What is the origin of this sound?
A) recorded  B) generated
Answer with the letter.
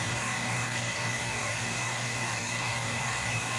B